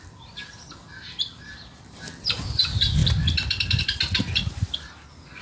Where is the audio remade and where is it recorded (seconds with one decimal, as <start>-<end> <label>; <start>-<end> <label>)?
0.0-1.5 recorded; 1.5-2.4 remade; 2.4-5.4 recorded